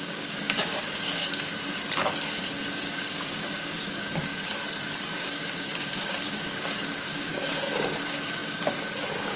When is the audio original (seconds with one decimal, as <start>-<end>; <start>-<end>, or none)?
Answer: 1.5-2.5; 4.3-5.1